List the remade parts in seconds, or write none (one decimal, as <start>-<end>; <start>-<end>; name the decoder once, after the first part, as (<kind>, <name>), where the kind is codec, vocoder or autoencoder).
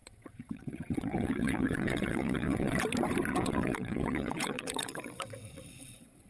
0.0-2.8 (vocoder, WaveNeXt); 3.3-6.3